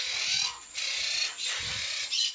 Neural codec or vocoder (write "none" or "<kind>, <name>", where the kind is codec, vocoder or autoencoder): none